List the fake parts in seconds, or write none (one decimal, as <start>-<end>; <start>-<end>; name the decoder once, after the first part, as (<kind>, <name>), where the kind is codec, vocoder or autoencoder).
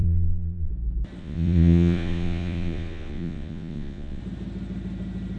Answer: 0.0-0.7 (vocoder, Vocos); 1.2-4.2